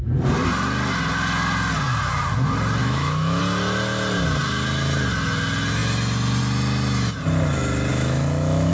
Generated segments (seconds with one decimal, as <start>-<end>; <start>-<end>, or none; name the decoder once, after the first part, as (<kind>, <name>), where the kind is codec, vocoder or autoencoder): 2.8-3.4 (autoencoder, DAC-VAE); 7.9-8.7